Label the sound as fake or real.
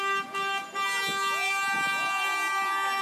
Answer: real